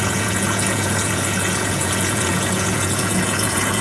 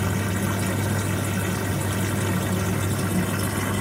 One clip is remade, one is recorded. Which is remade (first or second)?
first